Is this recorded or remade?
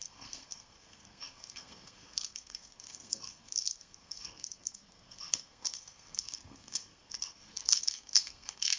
remade